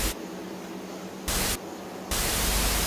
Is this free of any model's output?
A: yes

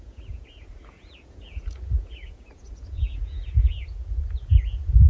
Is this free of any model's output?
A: no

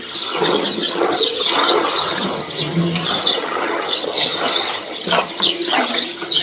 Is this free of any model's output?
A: no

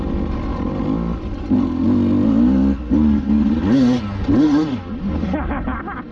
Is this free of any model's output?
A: yes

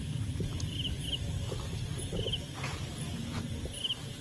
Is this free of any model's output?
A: yes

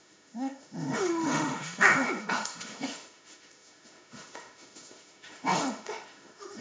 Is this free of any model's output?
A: no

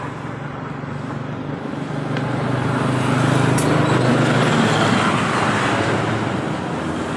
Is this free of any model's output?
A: yes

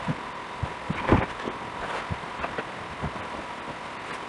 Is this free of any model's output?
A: yes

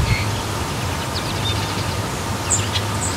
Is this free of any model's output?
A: yes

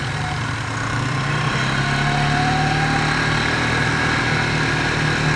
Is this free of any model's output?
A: yes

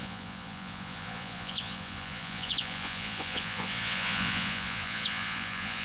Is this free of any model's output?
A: no